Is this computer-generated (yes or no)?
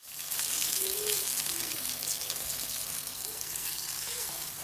yes